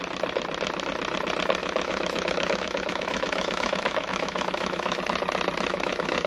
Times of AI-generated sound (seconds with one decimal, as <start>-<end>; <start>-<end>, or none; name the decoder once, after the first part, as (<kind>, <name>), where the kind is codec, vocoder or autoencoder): 1.6-5.0 (autoencoder, DAC-VAE); 5.7-6.3